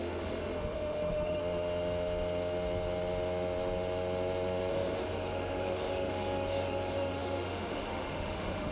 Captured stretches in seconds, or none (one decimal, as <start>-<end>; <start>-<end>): 1.4-4.7